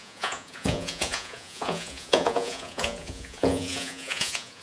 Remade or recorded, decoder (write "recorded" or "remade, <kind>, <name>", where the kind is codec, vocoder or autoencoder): remade, vocoder, Vocos